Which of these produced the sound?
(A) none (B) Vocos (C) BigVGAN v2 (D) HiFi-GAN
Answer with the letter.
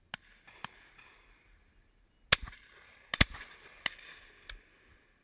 A